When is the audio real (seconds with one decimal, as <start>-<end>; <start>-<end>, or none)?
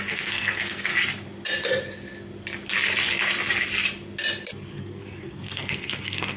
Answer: 0.9-4.7